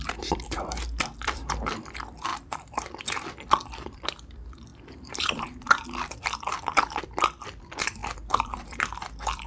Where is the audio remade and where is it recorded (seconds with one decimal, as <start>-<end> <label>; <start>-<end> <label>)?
0.0-9.5 remade